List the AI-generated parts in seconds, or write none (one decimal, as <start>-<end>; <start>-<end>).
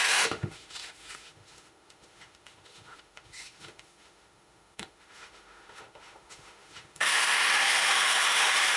0.0-8.8